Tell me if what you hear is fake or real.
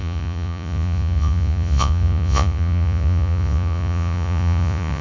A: fake